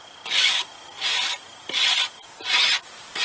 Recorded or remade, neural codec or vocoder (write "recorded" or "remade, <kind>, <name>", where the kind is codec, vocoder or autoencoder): recorded